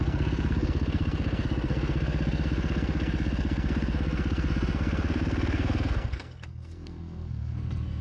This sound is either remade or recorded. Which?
remade